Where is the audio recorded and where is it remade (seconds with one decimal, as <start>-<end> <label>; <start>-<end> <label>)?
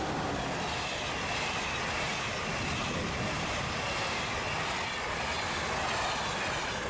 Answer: 0.0-6.9 recorded